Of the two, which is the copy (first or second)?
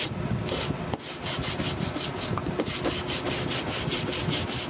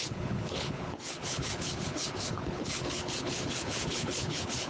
second